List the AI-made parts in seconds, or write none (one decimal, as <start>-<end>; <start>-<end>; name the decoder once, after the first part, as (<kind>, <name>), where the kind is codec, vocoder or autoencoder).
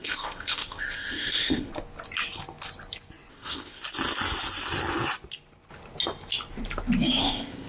0.0-1.7 (codec, ZipCodec); 3.3-3.8; 7.2-7.7